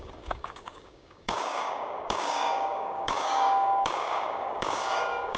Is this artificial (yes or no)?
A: yes